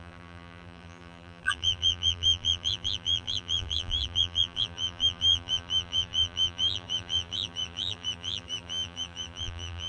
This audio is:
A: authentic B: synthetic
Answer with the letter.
B